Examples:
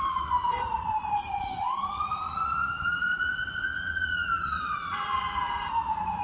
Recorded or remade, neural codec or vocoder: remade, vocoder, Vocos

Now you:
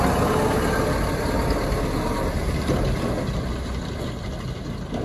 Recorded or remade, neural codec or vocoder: recorded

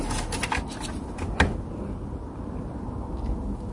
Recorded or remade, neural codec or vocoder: recorded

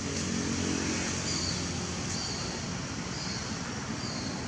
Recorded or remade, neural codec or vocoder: recorded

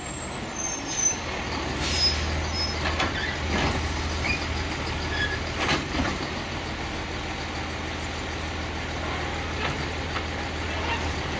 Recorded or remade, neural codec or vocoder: recorded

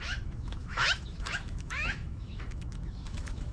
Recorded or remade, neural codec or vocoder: remade, autoencoder, DAC-VAE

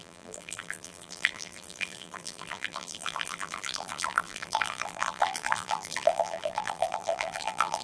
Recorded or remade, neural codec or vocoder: remade, vocoder, BigVGAN v2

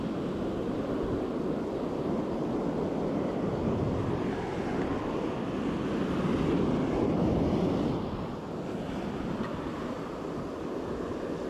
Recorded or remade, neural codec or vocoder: recorded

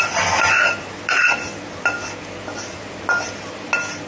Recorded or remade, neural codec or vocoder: recorded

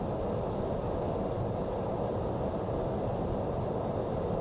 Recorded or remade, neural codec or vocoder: recorded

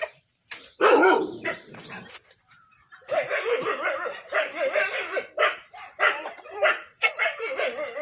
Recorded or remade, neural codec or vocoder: remade, vocoder, BigVGAN v2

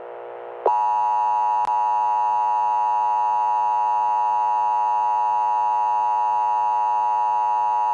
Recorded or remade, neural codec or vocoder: recorded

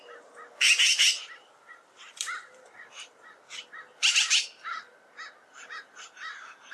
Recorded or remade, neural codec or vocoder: remade, vocoder, BigVGAN v2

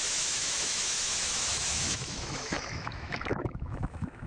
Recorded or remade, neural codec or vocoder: remade, autoencoder, DAC-VAE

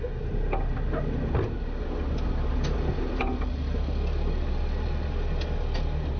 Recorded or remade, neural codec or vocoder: recorded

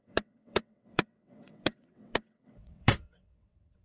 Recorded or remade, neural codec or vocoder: remade, vocoder, WaveNeXt